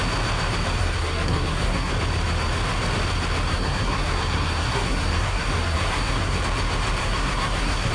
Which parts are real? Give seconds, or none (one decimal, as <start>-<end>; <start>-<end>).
0.0-0.8; 1.9-3.5; 6.4-7.0